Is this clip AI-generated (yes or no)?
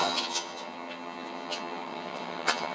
yes